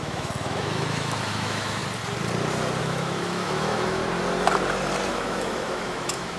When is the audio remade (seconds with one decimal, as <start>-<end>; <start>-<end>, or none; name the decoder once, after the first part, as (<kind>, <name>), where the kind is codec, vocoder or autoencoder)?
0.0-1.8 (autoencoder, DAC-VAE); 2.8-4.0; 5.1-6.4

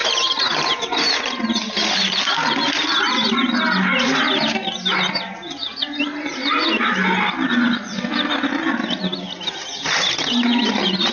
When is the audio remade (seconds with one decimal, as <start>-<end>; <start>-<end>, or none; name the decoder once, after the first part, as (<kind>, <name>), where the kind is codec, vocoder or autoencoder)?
0.0-1.4 (vocoder, BigVGAN v2); 5.7-6.4

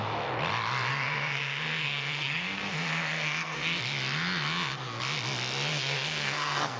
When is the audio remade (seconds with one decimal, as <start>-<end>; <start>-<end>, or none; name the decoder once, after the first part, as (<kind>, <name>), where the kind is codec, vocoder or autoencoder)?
0.9-3.8 (codec, SNAC); 5.7-6.8

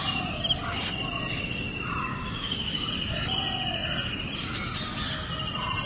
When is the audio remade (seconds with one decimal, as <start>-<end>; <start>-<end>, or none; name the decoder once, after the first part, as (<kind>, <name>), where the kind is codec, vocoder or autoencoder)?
2.1-2.9 (codec, DAC)

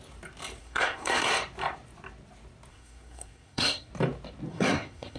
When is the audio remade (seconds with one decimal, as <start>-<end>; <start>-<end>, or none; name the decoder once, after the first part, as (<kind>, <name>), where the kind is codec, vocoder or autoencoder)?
0.6-1.3 (codec, SNAC); 2.7-3.9; 4.5-5.2

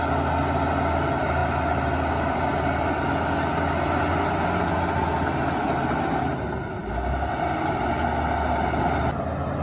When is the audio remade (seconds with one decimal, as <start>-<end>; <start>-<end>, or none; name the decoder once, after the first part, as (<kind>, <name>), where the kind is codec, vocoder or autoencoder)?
none